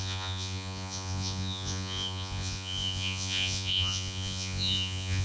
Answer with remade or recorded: remade